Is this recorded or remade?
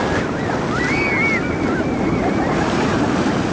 recorded